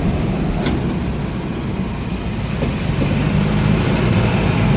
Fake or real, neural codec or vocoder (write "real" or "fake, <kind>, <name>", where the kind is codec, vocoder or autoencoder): real